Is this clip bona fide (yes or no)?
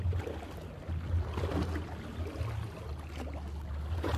yes